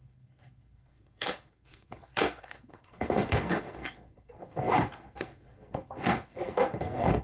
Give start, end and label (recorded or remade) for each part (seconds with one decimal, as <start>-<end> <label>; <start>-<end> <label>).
0.0-7.2 remade

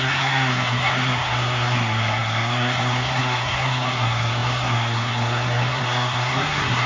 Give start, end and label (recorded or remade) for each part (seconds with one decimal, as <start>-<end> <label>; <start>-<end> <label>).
0.0-6.9 remade